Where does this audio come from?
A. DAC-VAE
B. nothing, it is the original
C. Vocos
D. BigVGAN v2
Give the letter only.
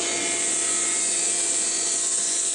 C